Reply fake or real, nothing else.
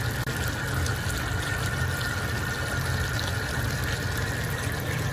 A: real